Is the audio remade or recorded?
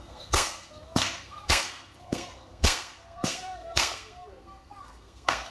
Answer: remade